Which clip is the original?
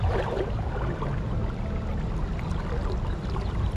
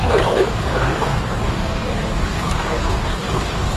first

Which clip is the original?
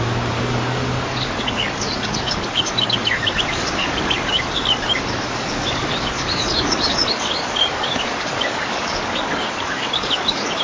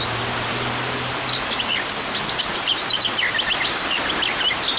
second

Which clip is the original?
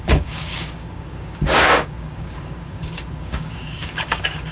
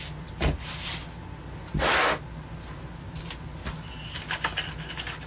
second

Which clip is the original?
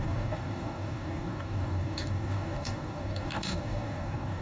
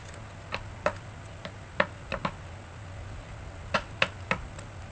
second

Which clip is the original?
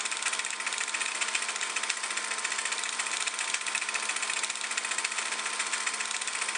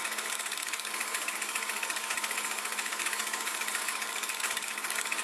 first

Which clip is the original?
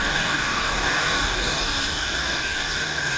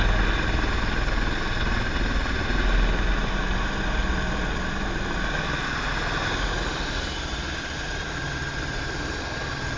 second